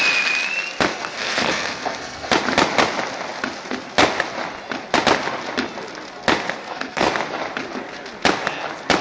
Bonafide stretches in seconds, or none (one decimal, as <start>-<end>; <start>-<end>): 0.0-0.9; 2.3-6.6; 7.1-9.0